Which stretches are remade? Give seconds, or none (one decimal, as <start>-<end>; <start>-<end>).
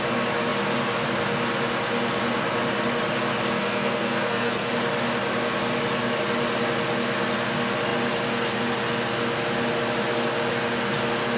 3.6-4.7